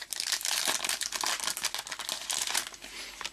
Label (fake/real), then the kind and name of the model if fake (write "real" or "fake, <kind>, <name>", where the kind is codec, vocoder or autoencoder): real